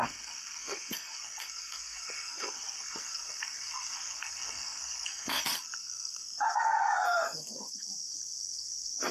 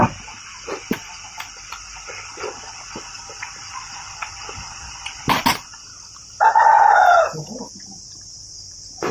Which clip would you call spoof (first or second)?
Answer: first